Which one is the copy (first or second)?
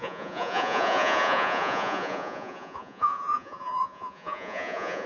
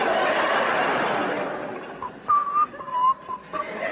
first